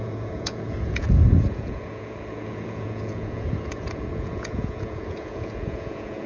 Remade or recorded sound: remade